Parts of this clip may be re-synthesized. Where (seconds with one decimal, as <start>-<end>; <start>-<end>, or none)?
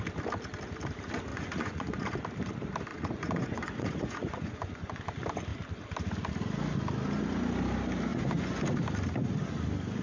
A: 1.3-2.2; 2.9-5.0; 8.1-8.6